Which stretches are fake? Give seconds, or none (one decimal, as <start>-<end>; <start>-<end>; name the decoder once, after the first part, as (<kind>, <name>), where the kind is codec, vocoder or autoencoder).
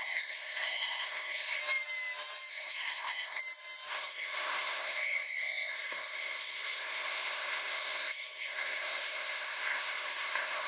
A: 0.0-1.6 (codec, SNAC); 2.5-3.4; 3.9-10.7